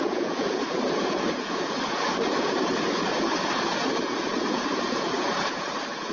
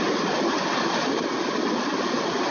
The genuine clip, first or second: second